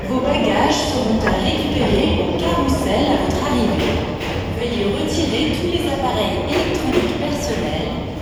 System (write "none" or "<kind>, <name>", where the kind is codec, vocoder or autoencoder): none